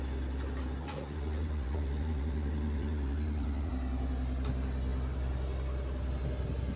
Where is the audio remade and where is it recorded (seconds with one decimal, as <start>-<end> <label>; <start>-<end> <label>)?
0.0-0.8 recorded; 0.8-3.7 remade; 3.7-6.8 recorded